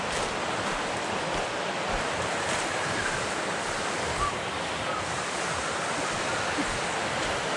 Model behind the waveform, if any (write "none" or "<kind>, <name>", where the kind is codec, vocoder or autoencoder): none